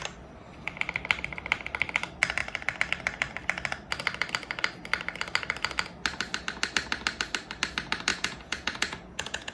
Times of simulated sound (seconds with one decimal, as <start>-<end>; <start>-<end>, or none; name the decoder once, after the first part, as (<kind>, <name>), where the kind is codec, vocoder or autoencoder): 8.1-9.5 (vocoder, Vocos)